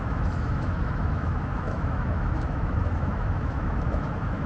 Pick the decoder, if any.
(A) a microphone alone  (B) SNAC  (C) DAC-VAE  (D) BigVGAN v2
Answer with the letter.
C